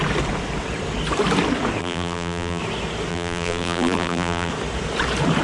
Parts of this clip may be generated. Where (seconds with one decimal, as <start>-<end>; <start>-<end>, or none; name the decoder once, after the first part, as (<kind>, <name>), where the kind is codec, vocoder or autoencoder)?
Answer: 1.8-2.6 (vocoder, BigVGAN v2); 3.1-4.5